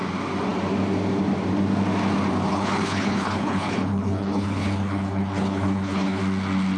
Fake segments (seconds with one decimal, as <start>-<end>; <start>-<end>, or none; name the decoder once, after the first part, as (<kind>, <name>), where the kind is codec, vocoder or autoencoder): 2.5-6.2 (codec, HILCodec)